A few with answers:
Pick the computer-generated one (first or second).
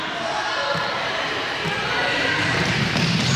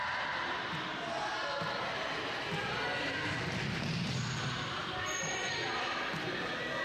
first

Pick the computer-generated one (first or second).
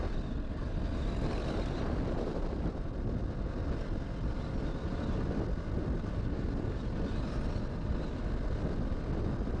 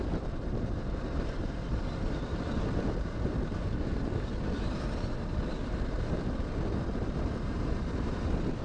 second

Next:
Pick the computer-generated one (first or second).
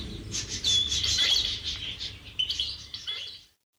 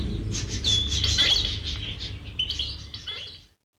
first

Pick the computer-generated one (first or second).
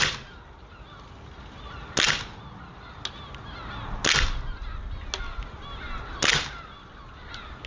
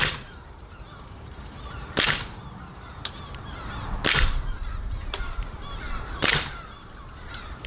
second